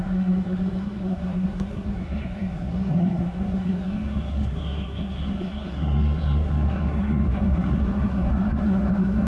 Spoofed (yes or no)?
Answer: yes